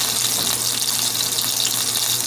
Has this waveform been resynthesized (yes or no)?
no